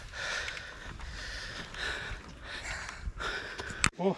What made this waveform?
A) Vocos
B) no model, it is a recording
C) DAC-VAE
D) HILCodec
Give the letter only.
B